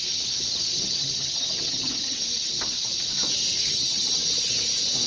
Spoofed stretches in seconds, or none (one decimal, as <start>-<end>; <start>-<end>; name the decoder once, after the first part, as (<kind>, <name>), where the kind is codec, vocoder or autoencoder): 0.5-2.2 (vocoder, HiFi-GAN); 3.5-4.2